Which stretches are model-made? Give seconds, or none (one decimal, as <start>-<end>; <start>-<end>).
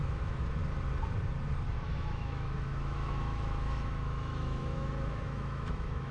0.0-0.6; 1.8-6.1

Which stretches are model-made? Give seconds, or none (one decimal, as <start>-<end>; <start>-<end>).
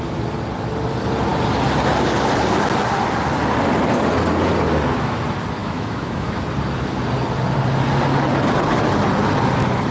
5.6-6.4